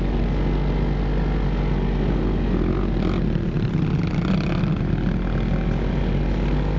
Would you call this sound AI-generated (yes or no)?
no